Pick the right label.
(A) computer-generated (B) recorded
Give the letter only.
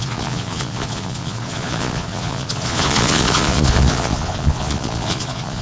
A